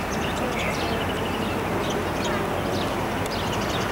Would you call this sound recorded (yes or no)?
yes